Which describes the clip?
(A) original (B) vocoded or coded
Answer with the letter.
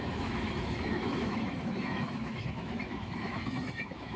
B